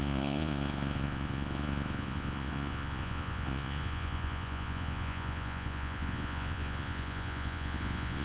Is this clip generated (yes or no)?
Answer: yes